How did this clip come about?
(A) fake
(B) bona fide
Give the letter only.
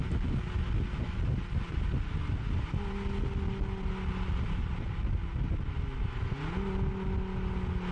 B